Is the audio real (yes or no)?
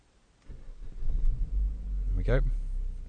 yes